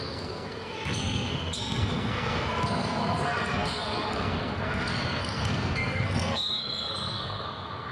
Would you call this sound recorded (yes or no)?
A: no